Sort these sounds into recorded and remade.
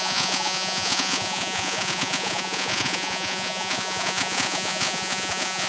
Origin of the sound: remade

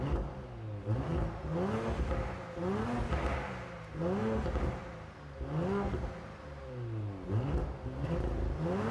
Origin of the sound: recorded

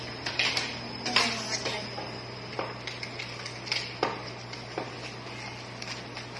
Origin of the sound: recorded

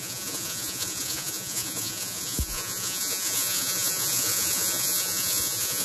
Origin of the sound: remade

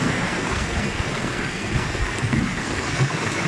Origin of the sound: remade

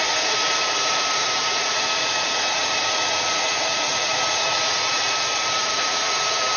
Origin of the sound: remade